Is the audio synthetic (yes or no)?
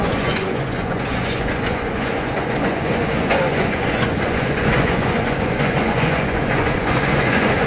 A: yes